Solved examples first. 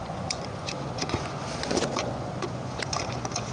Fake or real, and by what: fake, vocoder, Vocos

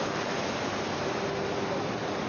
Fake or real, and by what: real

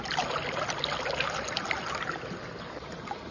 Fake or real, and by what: real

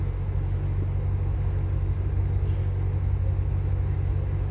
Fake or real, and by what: real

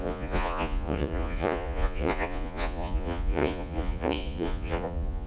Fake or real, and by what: fake, vocoder, Vocos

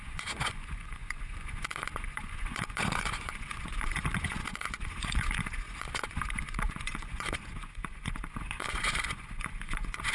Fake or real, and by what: fake, vocoder, Vocos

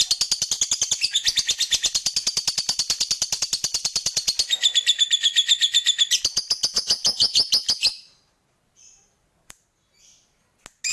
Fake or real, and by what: real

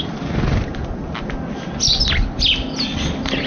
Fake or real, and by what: real